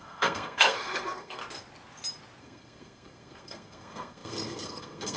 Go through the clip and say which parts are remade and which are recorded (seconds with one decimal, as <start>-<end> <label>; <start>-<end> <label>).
0.0-1.4 remade; 1.4-2.4 recorded; 2.4-5.2 remade